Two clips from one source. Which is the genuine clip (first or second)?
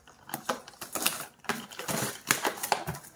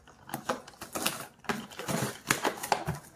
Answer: second